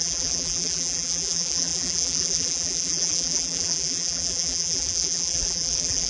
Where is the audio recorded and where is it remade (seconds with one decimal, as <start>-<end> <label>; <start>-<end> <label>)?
0.0-6.1 remade